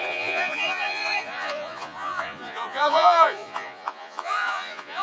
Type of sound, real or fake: fake